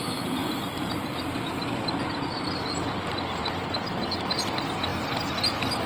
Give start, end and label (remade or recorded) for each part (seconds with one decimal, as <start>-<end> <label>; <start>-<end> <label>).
0.0-0.4 recorded; 0.4-2.8 remade; 2.8-5.9 recorded